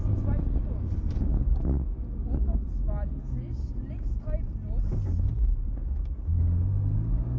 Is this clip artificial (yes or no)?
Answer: no